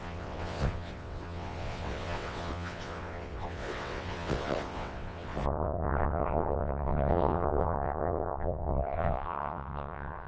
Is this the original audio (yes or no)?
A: no